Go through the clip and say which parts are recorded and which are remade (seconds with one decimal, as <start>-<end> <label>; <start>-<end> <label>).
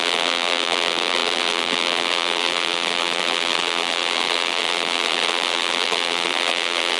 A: 0.0-7.0 remade